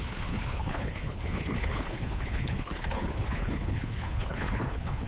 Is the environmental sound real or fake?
fake